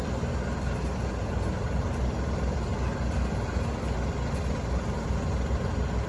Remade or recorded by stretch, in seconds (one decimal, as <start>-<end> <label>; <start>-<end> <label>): 0.0-6.1 recorded